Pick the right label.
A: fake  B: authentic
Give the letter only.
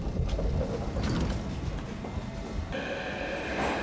B